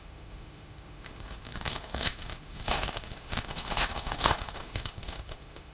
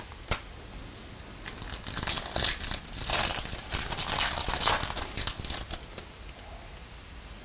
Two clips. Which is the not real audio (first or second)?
first